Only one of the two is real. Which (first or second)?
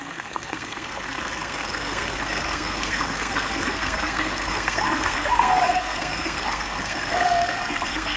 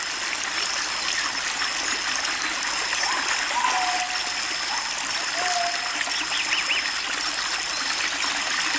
second